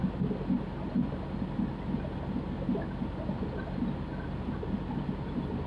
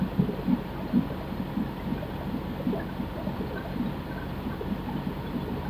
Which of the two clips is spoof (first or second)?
second